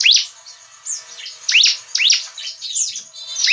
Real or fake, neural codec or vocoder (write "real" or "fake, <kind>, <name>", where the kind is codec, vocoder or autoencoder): real